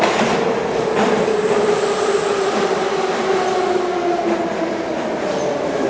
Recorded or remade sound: recorded